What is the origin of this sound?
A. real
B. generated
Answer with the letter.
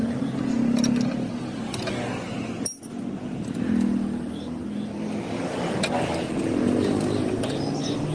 A